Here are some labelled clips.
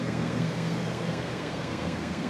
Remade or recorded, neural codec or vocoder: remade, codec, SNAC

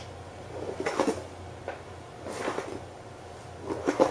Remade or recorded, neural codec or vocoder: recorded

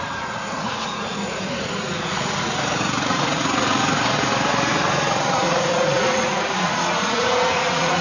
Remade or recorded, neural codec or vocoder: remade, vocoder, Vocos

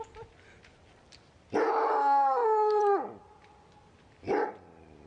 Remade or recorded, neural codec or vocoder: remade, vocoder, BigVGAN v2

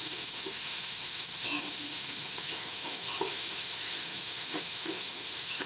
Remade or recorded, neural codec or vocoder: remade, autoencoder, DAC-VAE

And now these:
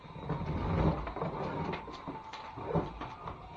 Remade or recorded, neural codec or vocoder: recorded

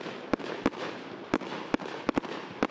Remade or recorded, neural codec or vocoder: recorded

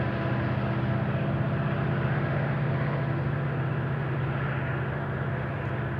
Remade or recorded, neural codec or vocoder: recorded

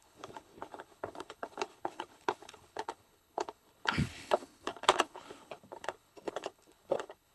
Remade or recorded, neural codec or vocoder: remade, codec, HILCodec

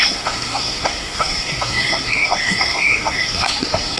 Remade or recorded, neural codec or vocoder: remade, codec, SNAC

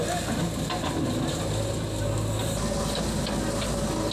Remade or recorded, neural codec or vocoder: recorded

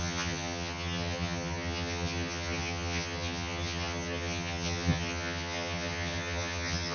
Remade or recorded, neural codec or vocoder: remade, vocoder, HiFi-GAN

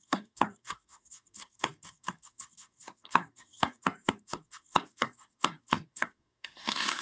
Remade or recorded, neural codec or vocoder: remade, codec, SNAC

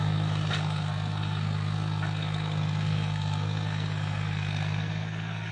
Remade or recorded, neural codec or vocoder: remade, codec, SNAC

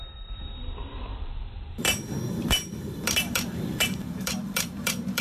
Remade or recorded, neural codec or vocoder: remade, vocoder, BigVGAN v2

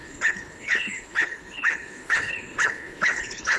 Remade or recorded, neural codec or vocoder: remade, codec, HILCodec